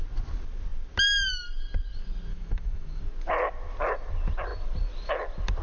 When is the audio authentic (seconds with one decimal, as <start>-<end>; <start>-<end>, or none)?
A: 0.0-2.3; 3.0-5.6